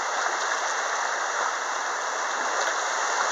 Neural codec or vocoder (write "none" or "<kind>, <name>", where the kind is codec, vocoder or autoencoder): none